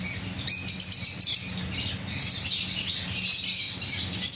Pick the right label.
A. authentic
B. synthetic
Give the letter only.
A